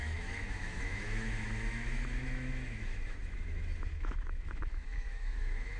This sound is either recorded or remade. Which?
remade